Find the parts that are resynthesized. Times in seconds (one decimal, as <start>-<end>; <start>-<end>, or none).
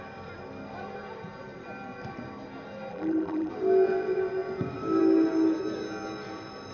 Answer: 2.9-3.5